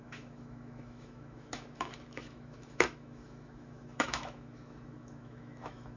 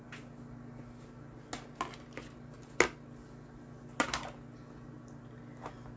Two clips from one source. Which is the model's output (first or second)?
first